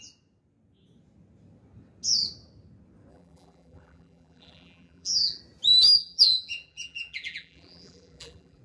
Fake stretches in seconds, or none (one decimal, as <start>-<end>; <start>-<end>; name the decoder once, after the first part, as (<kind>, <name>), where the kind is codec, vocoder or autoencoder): 3.1-5.4 (vocoder, BigVGAN v2); 6.0-8.6